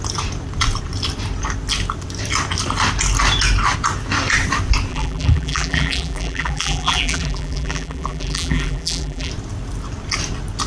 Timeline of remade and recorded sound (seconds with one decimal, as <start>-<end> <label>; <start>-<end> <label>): 0.0-4.9 recorded; 4.9-9.3 remade; 9.3-10.7 recorded